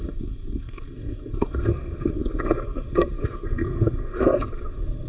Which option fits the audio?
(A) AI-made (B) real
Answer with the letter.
A